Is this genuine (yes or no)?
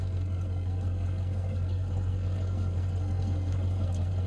no